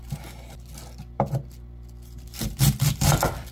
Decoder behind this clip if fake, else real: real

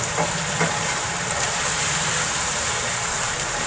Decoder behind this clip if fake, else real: fake, vocoder, BigVGAN v2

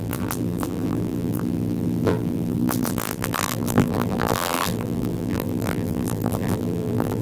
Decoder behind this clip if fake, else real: fake, vocoder, BigVGAN v2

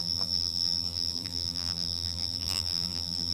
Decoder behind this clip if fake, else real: fake, vocoder, BigVGAN v2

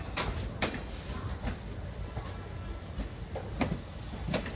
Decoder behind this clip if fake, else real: real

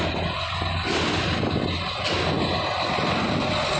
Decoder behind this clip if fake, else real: real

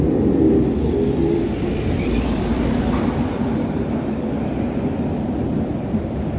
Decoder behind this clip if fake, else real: fake, vocoder, BigVGAN v2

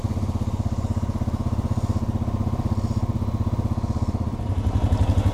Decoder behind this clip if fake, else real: real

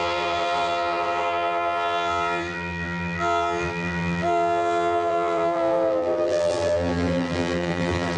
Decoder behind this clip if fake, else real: fake, vocoder, BigVGAN v2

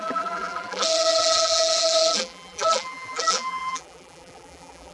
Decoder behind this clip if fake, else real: fake, vocoder, BigVGAN v2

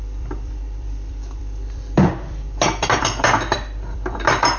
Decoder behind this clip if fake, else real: fake, vocoder, BigVGAN v2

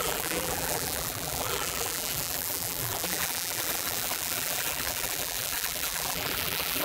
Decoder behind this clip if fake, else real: fake, vocoder, BigVGAN v2